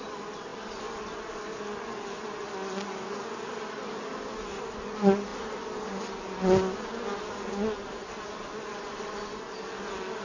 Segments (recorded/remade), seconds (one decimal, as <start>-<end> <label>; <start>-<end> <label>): 0.0-10.2 recorded

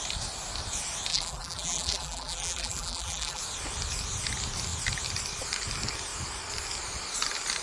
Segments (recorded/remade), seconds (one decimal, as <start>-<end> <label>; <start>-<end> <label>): 0.0-1.1 recorded; 1.1-3.4 remade; 3.4-7.6 recorded

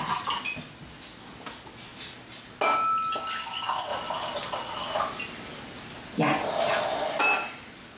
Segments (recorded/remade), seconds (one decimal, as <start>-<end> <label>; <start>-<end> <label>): 0.0-8.0 recorded

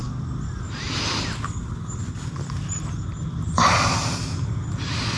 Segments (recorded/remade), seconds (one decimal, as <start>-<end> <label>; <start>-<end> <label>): 0.0-5.2 recorded

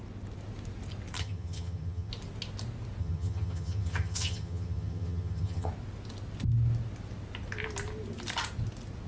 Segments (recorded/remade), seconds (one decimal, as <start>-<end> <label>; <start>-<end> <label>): 0.0-1.2 recorded; 1.2-2.1 remade; 2.1-3.0 recorded; 3.0-5.7 remade; 5.7-9.1 recorded